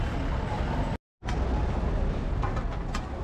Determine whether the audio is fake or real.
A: real